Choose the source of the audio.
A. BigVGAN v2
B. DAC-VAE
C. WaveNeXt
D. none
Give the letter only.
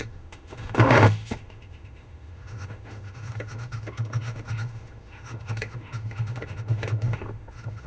B